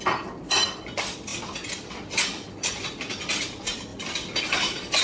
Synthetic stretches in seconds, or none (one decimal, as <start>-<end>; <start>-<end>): none